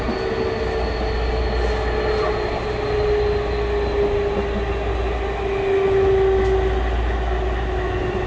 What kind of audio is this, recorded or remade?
recorded